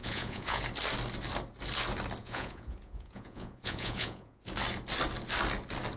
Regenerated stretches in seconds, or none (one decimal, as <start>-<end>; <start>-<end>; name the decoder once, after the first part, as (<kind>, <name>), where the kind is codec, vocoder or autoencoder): 0.0-0.6 (vocoder, Vocos); 2.2-4.5